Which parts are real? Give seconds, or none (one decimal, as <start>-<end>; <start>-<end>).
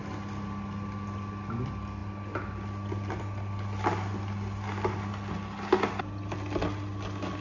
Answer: 0.0-7.4